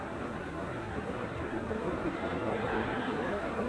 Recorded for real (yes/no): no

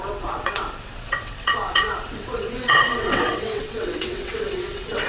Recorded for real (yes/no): no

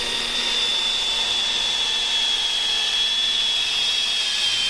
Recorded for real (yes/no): yes